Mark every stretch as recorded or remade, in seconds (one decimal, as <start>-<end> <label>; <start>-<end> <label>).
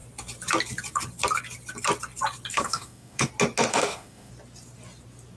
0.0-2.5 recorded; 2.5-3.3 remade; 3.3-3.7 recorded; 3.7-4.3 remade; 4.3-5.4 recorded